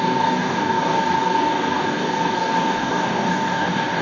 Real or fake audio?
fake